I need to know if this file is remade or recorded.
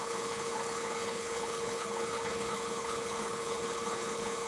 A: remade